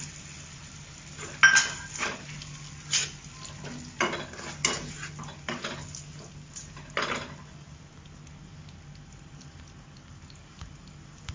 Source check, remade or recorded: recorded